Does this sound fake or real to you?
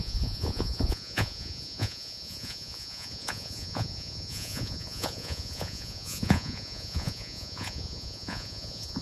fake